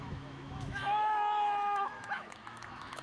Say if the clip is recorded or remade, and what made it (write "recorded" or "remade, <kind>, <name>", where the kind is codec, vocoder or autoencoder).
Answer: remade, autoencoder, DAC-VAE